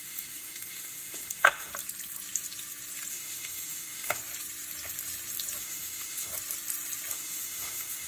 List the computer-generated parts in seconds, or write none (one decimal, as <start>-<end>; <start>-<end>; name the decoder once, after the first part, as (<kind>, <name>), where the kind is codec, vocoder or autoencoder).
0.0-1.7 (autoencoder, DAC-VAE); 3.1-4.2; 5.6-6.3; 7.1-8.1